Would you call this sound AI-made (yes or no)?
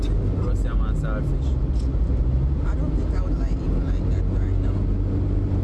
no